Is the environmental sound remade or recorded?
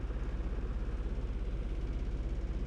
recorded